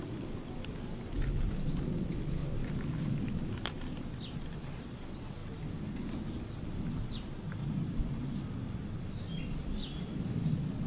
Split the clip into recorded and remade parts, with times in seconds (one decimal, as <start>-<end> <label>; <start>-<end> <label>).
0.0-10.9 recorded